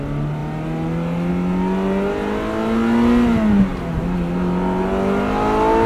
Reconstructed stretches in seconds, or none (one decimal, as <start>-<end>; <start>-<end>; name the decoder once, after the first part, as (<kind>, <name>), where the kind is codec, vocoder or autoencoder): none